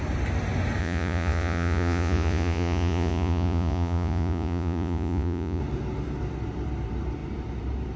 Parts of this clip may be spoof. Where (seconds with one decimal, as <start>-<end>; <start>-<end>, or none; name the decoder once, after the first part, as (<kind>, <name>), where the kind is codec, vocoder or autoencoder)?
0.8-5.6 (vocoder, Vocos)